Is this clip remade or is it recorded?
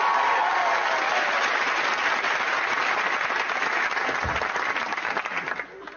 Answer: recorded